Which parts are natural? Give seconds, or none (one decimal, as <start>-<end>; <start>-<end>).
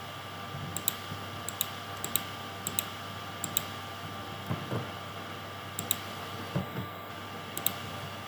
0.0-6.6; 7.1-8.3